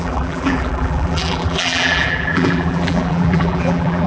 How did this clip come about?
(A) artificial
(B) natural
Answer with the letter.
A